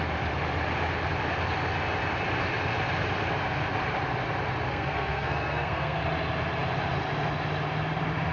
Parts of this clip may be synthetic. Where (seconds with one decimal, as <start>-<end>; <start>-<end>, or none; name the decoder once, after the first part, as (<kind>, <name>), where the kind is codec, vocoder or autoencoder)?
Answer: 4.7-6.0 (codec, SNAC)